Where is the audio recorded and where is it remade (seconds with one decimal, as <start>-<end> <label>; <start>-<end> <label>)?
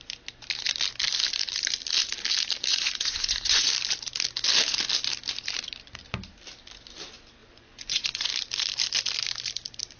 0.0-2.7 recorded; 2.7-3.7 remade; 3.7-7.4 recorded; 7.4-8.3 remade; 8.3-10.0 recorded